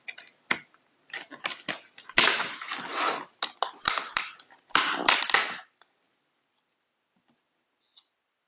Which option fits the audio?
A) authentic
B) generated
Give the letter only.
A